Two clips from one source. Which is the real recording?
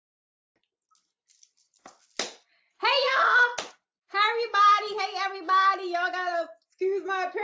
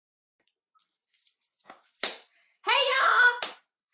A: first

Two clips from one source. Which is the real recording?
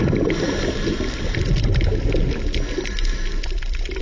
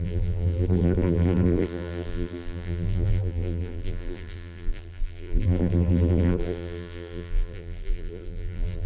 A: first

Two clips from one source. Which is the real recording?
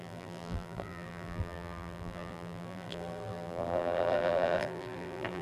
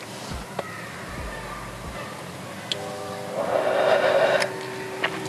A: second